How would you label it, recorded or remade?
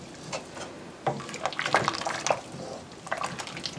recorded